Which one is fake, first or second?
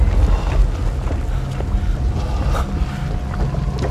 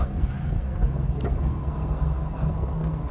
second